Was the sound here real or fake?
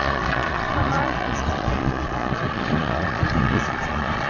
fake